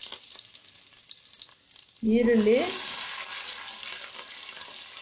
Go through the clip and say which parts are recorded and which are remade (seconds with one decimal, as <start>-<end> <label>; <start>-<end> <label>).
0.0-5.0 recorded